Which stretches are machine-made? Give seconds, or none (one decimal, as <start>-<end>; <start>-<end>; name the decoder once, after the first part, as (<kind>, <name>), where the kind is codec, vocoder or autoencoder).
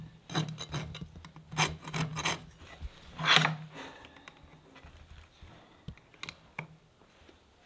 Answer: none